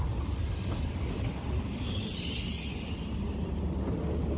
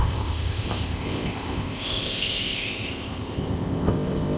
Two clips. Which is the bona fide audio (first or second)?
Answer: first